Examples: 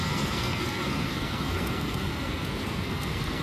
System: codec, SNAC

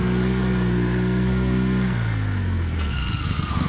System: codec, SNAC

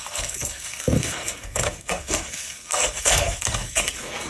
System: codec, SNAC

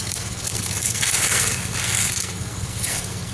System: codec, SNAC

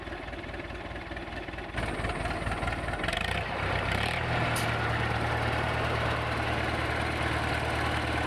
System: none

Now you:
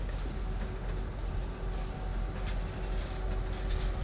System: none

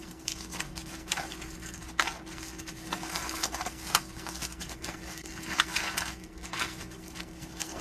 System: codec, SNAC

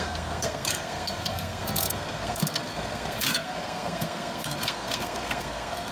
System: codec, SNAC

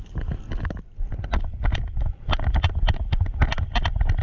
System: none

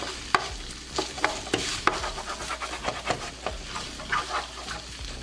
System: none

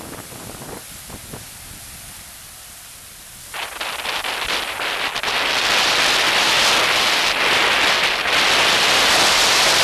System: none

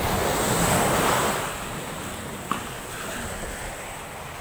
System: none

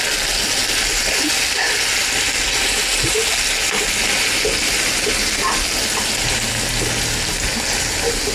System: none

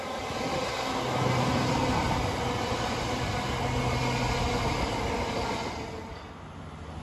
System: none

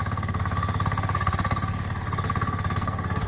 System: codec, SNAC